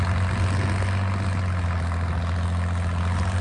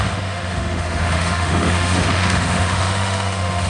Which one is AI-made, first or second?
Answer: second